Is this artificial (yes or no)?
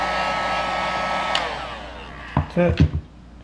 no